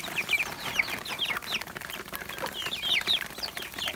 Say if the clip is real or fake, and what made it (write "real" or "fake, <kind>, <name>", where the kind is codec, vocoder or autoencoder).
fake, vocoder, BigVGAN v2